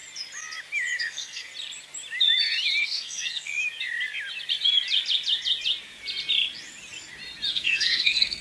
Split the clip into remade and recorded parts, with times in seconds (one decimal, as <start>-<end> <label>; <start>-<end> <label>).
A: 0.0-1.0 recorded; 1.0-1.5 remade; 1.5-2.8 recorded; 2.8-3.5 remade; 3.5-7.5 recorded; 7.5-8.4 remade